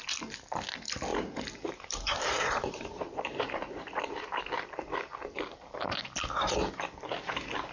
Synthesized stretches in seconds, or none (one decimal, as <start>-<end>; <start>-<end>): 1.1-4.4